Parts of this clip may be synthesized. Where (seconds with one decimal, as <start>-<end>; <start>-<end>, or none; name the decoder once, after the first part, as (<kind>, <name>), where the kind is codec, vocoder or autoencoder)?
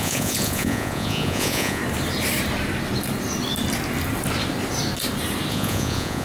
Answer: 0.0-1.8 (vocoder, Vocos); 5.5-6.2